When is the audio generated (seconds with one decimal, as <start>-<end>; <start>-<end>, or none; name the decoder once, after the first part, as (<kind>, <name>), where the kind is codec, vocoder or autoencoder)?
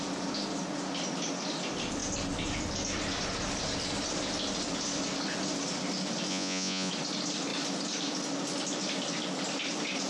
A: 6.3-6.9 (vocoder, Vocos)